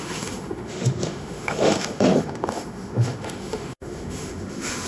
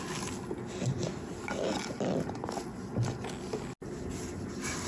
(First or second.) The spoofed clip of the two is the first